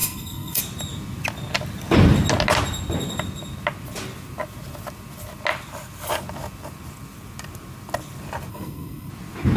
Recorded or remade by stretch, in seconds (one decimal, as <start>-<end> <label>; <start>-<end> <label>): 0.0-0.6 remade; 0.6-8.5 recorded; 8.5-9.1 remade; 9.1-9.6 recorded